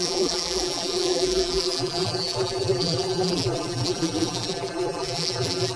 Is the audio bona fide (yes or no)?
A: no